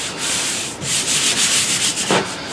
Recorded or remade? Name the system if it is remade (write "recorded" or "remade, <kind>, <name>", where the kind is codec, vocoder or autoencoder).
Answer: remade, vocoder, BigVGAN v2